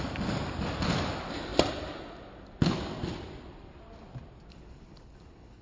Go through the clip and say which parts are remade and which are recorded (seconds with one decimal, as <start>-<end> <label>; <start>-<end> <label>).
0.0-4.5 recorded; 4.5-5.6 remade